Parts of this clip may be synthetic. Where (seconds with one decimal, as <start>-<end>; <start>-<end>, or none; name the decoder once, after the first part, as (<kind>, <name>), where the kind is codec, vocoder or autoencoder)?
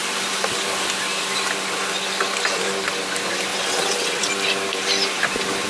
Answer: 3.5-4.3 (vocoder, WaveNeXt)